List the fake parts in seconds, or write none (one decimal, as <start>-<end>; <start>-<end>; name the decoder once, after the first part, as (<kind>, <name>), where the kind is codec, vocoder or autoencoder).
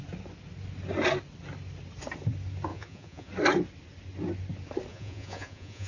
2.7-3.3 (vocoder, Vocos); 4.9-5.9